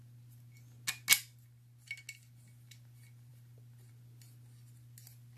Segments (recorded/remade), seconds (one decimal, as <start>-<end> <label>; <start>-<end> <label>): 0.0-5.4 recorded